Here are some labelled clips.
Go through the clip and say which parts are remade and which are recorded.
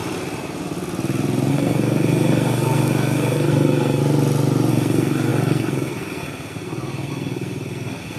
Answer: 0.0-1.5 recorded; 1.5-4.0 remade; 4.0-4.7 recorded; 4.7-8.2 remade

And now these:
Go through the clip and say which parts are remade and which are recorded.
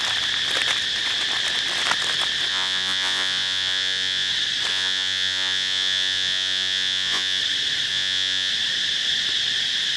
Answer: 0.0-2.5 recorded; 2.5-4.3 remade; 4.3-4.7 recorded; 4.7-7.4 remade; 7.4-7.9 recorded; 7.9-8.5 remade; 8.5-10.0 recorded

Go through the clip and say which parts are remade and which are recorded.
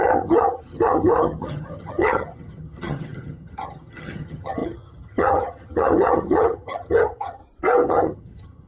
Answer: 0.0-7.4 remade; 7.4-7.9 recorded; 7.9-8.7 remade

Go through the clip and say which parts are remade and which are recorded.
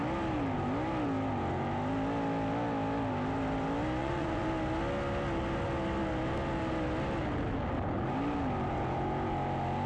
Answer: 0.0-4.0 recorded; 4.0-4.5 remade; 4.5-9.9 recorded